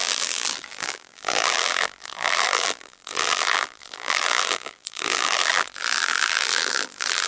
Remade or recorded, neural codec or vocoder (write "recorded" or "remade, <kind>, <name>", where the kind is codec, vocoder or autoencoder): remade, vocoder, BigVGAN v2